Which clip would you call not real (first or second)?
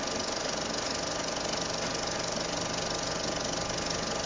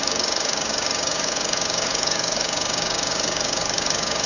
second